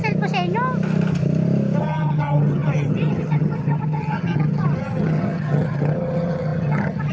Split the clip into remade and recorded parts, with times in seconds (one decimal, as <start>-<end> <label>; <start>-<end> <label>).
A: 0.0-1.8 recorded; 1.8-7.1 remade